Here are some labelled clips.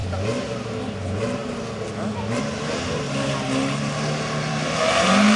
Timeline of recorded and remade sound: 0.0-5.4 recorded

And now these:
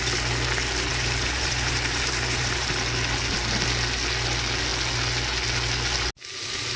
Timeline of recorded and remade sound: 0.0-0.9 recorded; 0.9-2.7 remade; 2.7-6.8 recorded

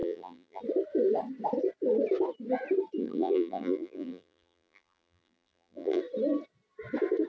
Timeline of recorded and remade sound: 0.0-0.6 remade; 0.6-3.0 recorded; 3.0-6.0 remade; 6.0-7.3 recorded

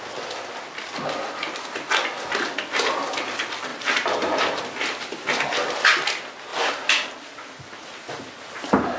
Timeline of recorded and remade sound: 0.0-3.7 recorded; 3.7-4.6 remade; 4.6-6.5 recorded; 6.5-7.2 remade; 7.2-9.0 recorded

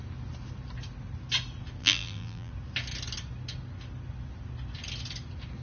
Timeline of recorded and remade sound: 0.0-1.8 recorded; 1.8-2.5 remade; 2.5-5.6 recorded